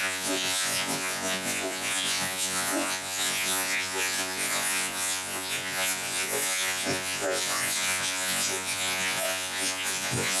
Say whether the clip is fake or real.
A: fake